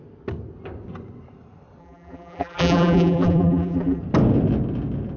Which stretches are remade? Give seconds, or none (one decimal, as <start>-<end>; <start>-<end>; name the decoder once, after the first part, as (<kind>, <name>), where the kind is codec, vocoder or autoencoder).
1.8-4.0 (vocoder, BigVGAN v2)